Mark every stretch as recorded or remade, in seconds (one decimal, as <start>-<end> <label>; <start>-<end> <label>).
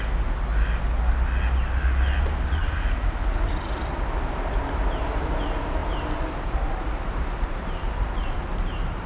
0.0-5.8 recorded; 5.8-9.1 remade